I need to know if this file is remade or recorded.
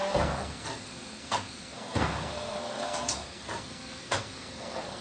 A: remade